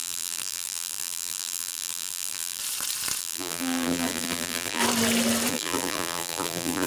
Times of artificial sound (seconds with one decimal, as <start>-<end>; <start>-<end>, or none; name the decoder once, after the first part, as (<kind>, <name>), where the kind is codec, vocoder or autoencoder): 0.0-2.6 (vocoder, BigVGAN v2); 3.2-4.8; 5.5-6.9